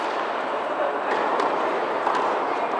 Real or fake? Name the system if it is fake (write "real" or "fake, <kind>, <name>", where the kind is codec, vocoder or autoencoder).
real